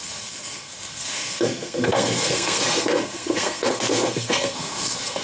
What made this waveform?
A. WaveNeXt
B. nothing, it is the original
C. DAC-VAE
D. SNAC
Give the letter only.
D